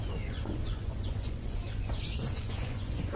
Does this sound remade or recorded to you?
remade